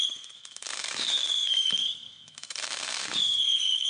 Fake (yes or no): yes